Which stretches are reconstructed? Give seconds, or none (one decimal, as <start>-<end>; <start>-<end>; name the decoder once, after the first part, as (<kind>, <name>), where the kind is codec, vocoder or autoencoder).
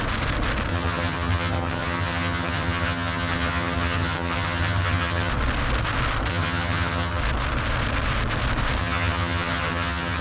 0.7-5.3 (vocoder, HiFi-GAN); 6.3-7.2; 8.8-10.2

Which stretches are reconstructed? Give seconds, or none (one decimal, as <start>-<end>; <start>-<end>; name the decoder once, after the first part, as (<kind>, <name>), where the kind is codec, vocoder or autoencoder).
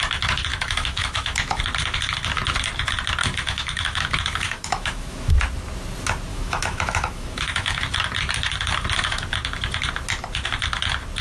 0.5-1.6 (autoencoder, DAC-VAE); 3.2-5.3; 6.3-7.8